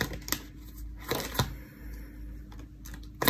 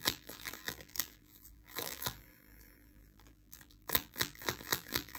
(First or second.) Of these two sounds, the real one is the first